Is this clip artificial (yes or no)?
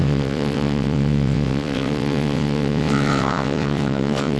yes